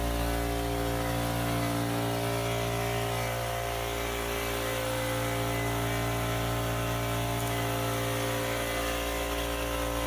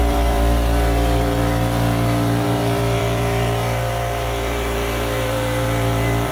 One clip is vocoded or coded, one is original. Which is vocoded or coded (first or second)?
second